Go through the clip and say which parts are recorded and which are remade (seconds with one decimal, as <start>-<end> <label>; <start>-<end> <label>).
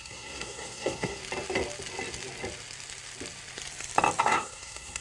0.0-1.2 remade; 1.2-4.2 recorded; 4.2-5.0 remade